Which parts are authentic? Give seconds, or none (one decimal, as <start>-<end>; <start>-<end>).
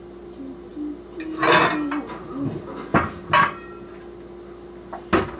0.0-5.4